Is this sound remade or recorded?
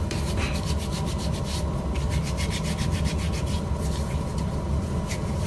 recorded